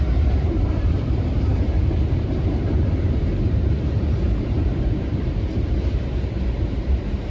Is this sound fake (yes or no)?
yes